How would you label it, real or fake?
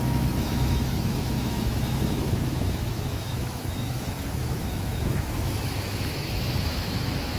fake